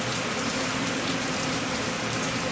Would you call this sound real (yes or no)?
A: yes